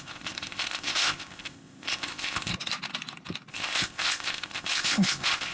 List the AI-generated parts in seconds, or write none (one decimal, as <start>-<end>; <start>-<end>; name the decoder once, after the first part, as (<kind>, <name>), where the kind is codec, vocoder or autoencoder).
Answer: 0.0-2.5 (codec, ZipCodec); 3.5-5.5

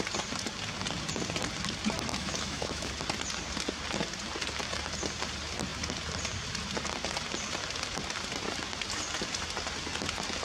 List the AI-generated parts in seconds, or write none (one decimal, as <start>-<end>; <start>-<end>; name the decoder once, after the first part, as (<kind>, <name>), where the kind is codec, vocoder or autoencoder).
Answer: 2.1-2.9 (autoencoder, DAC-VAE)

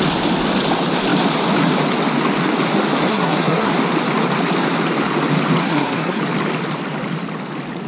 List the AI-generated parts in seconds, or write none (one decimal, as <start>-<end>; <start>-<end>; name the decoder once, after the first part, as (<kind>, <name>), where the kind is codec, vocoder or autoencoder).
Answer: 3.1-3.7 (codec, SNAC); 5.6-6.2

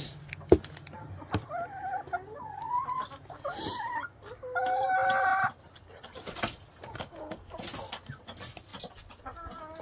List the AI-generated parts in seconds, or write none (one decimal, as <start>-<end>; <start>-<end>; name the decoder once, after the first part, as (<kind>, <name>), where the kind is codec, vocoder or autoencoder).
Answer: none

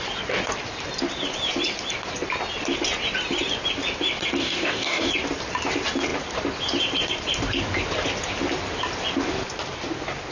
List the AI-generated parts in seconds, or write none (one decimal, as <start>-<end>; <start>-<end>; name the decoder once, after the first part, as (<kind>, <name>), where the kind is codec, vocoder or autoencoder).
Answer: 4.4-5.1 (codec, DAC)

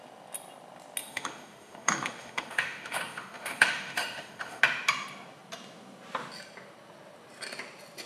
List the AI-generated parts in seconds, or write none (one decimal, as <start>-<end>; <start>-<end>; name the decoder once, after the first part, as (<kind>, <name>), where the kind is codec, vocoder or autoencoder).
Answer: 1.0-4.6 (autoencoder, DAC-VAE)

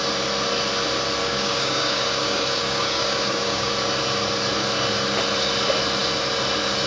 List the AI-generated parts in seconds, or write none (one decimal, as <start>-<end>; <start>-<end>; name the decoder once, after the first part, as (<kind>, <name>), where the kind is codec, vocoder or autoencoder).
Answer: 1.2-3.7 (codec, DAC)